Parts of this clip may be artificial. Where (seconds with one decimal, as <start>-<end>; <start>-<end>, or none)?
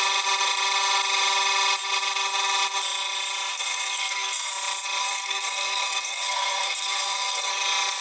3.5-4.5; 5.0-7.5